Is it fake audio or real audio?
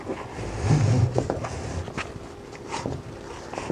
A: real